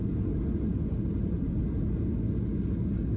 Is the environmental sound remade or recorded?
recorded